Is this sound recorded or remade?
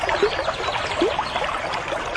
recorded